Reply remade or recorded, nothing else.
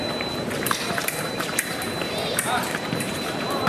remade